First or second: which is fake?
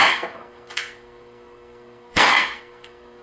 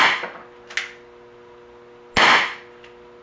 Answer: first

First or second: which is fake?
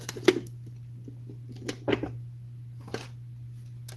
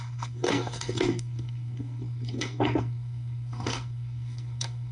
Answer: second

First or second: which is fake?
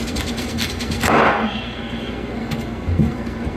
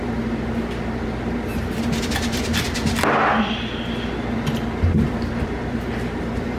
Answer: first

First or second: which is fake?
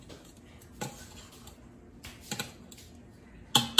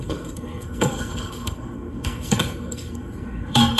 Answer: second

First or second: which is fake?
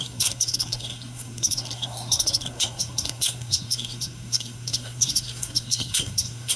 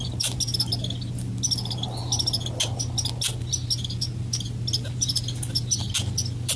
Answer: first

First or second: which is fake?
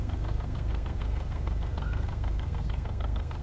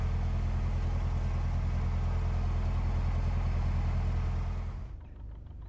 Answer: first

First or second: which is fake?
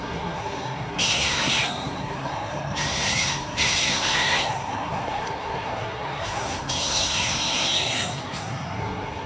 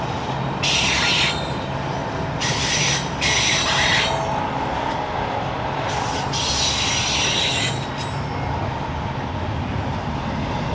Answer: first